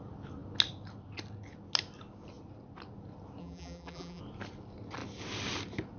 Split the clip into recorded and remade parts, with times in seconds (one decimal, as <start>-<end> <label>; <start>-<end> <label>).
0.0-3.4 recorded; 3.4-4.2 remade; 4.2-6.0 recorded